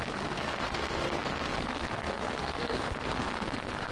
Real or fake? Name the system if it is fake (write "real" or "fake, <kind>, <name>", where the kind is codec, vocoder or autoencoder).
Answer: fake, codec, SNAC